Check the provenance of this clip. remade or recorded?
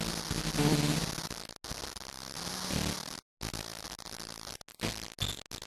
recorded